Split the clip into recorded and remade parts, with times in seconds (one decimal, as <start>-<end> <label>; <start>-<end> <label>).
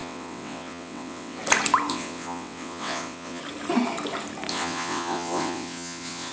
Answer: 0.0-1.4 remade; 1.4-1.9 recorded; 1.9-3.4 remade; 3.4-4.5 recorded; 4.5-6.3 remade